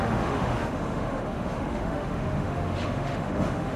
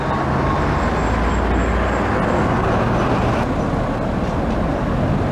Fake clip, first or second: first